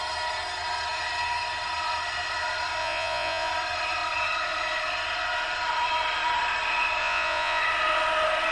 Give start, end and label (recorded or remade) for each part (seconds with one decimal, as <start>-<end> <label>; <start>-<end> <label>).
0.0-2.8 recorded; 2.8-3.5 remade; 3.5-7.0 recorded; 7.0-7.6 remade; 7.6-8.5 recorded